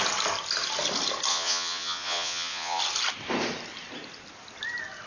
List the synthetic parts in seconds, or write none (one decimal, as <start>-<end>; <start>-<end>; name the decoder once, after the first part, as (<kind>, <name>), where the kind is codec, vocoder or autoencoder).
1.3-2.8 (vocoder, Vocos)

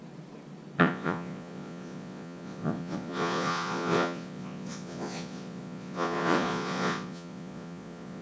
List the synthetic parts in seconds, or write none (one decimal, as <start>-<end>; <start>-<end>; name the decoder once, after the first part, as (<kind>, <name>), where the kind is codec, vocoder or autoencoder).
0.8-8.2 (vocoder, Vocos)

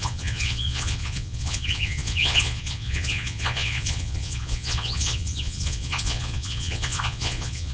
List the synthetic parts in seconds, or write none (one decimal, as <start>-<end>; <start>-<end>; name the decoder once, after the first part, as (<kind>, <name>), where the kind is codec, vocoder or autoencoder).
0.0-7.7 (vocoder, Vocos)

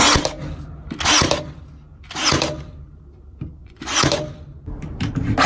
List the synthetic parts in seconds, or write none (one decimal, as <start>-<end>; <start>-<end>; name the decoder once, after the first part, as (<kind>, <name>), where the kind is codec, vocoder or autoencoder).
3.6-4.1 (vocoder, Vocos)